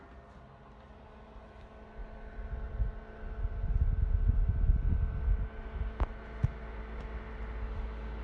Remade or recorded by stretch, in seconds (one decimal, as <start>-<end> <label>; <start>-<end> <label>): 0.0-8.2 recorded